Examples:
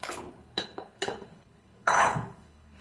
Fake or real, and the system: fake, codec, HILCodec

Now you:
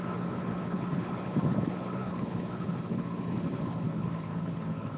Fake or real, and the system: fake, codec, HILCodec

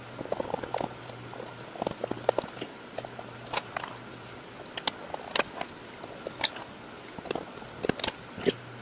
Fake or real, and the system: real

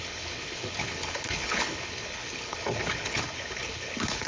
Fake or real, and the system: fake, codec, HILCodec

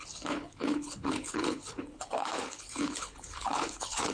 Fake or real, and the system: fake, codec, HILCodec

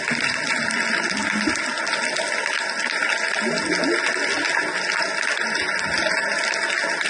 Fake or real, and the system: real